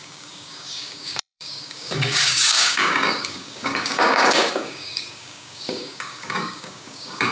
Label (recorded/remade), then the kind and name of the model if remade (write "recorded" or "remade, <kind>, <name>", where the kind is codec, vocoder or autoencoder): remade, codec, DAC